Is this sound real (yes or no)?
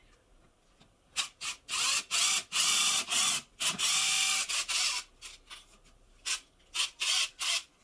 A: yes